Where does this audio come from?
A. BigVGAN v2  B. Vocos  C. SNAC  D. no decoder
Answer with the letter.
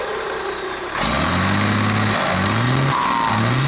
D